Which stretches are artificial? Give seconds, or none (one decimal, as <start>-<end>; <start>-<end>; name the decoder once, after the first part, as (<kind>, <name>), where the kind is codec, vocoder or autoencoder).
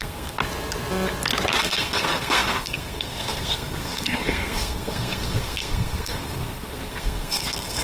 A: 0.0-0.4 (codec, SNAC); 1.6-7.8